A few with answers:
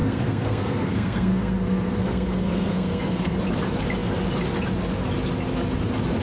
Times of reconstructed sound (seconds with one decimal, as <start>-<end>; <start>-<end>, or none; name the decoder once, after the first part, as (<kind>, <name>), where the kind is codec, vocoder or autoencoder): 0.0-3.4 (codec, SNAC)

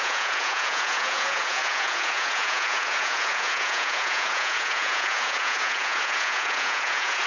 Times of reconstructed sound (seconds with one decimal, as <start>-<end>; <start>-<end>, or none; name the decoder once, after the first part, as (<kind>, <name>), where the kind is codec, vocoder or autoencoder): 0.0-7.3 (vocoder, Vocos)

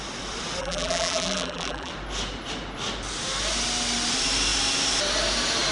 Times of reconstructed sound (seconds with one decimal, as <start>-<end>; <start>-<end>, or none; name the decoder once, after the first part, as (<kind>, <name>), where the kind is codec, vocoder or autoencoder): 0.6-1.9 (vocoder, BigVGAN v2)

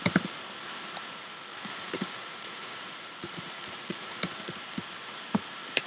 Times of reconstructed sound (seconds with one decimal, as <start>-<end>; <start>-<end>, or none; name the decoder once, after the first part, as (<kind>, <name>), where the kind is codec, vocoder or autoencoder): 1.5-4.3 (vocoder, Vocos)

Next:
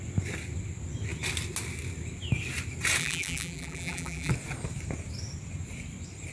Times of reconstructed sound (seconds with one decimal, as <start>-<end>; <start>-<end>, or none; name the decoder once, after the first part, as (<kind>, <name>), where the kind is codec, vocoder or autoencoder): 3.0-4.3 (vocoder, BigVGAN v2)

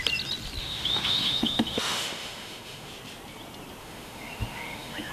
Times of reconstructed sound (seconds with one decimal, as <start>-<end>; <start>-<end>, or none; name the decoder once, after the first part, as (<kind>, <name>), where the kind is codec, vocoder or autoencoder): 0.6-2.9 (autoencoder, DAC-VAE); 3.8-5.1